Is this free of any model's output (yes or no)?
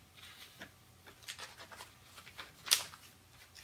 yes